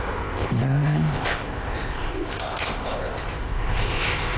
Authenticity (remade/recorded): remade